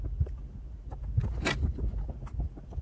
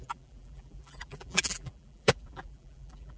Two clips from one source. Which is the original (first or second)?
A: first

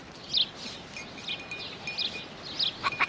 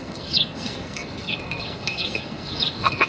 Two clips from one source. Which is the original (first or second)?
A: first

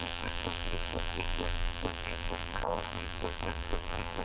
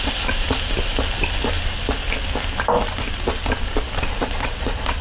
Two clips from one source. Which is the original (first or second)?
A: second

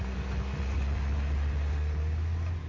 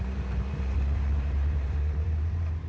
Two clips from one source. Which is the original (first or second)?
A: first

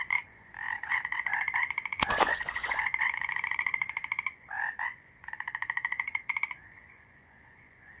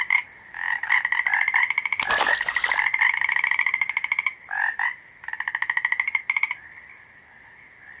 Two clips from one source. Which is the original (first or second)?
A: second